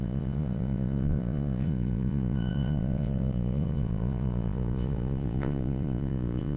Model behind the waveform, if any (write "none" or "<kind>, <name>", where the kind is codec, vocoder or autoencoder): vocoder, Vocos